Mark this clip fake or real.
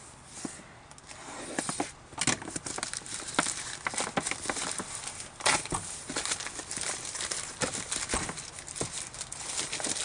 real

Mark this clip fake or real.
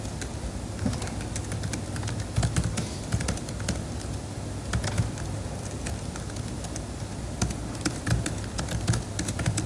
real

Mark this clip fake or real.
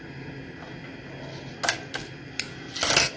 real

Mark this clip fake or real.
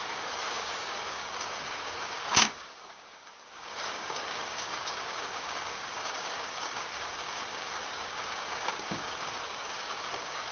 fake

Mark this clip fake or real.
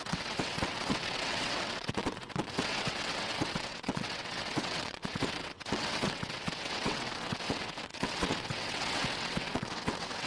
fake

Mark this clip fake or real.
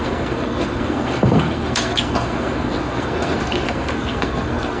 fake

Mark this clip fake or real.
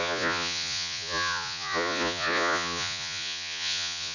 fake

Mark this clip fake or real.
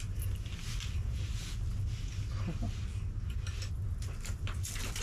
real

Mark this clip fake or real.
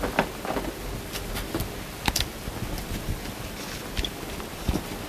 real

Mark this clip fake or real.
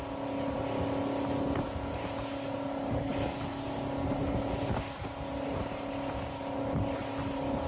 real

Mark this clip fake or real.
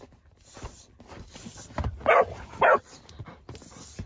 real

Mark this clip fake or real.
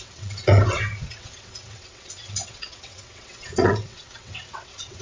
fake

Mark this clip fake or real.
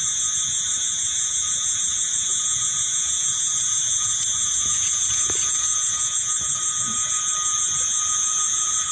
fake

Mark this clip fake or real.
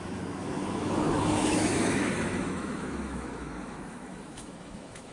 fake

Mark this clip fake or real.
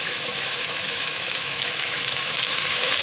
fake